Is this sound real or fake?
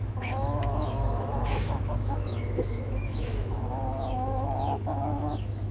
fake